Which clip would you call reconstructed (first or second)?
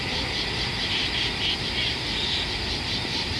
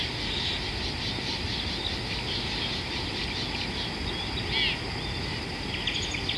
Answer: first